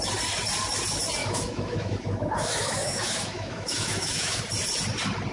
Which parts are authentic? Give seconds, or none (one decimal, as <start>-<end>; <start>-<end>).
0.0-1.2; 4.4-5.3